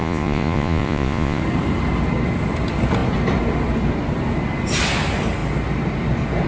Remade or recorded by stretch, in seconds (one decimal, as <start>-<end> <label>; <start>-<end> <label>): 0.0-1.4 remade; 1.4-6.5 recorded